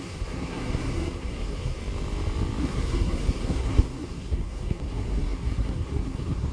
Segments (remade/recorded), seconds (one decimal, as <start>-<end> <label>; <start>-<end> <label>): 0.0-1.8 remade; 1.8-2.6 recorded; 2.6-6.5 remade